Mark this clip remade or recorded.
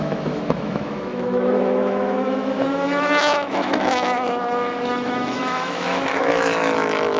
remade